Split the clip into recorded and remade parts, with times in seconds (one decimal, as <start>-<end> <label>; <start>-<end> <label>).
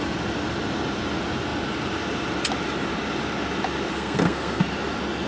0.0-3.9 recorded; 3.9-4.6 remade; 4.6-5.3 recorded